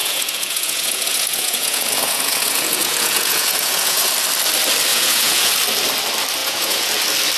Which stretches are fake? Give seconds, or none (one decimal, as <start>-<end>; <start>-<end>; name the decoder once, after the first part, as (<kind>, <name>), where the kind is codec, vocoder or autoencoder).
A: 0.0-4.1 (vocoder, Vocos); 4.9-5.5; 6.4-6.9